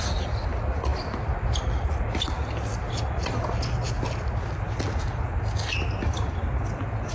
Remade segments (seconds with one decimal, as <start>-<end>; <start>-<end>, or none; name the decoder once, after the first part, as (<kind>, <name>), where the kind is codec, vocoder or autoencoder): none